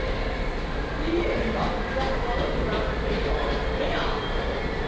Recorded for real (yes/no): yes